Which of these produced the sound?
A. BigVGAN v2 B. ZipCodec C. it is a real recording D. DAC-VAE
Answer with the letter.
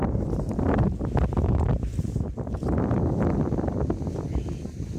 C